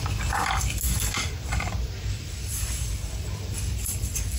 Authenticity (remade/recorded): recorded